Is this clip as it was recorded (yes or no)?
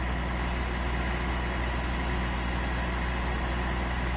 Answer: yes